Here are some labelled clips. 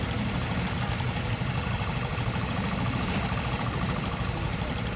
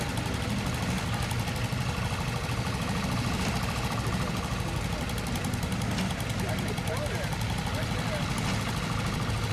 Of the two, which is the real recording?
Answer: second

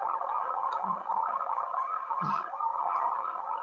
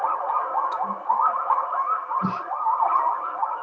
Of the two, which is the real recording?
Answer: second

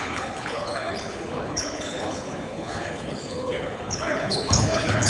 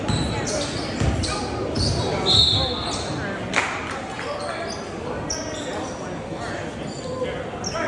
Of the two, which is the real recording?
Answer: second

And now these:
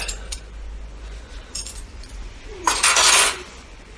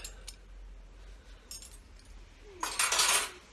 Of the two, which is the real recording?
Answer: second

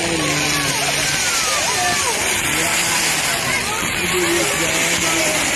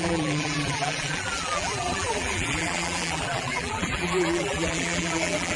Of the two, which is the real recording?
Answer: first